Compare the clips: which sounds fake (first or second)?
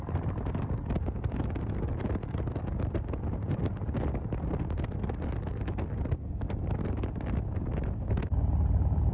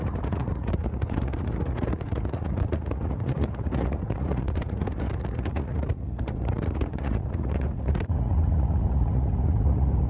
second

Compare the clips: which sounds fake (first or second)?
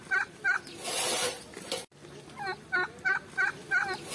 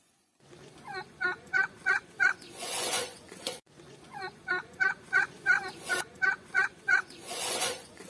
second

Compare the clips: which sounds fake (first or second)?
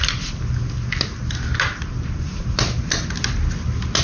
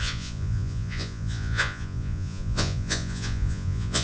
second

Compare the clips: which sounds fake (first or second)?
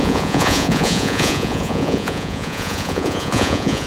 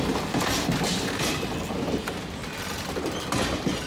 first